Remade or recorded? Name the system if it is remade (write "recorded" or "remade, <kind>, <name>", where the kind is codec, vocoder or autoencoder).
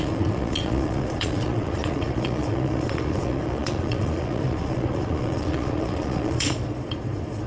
remade, vocoder, Vocos